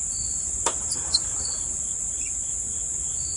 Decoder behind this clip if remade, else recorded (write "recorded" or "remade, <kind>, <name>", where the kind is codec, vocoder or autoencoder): recorded